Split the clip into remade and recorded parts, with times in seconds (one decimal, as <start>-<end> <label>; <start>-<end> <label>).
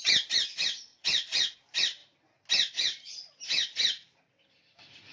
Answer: 0.0-0.9 recorded; 0.9-1.5 remade; 1.5-5.1 recorded